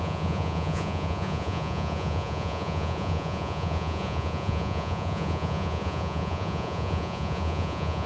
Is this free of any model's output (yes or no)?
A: no